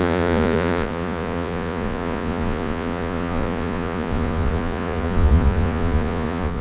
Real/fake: fake